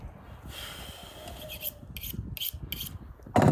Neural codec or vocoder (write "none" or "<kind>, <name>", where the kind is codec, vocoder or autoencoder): none